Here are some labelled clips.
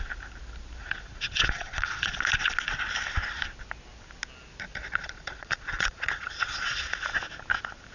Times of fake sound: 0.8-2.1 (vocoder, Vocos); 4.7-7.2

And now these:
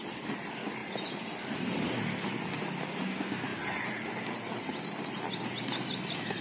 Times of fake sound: none